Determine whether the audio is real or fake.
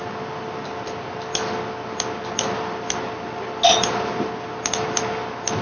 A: real